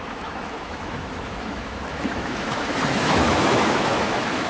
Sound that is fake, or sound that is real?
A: fake